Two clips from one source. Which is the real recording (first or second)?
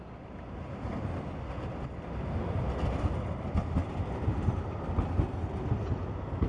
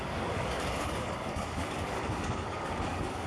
first